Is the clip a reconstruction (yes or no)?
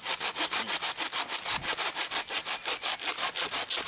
no